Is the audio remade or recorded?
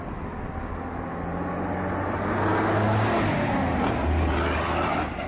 recorded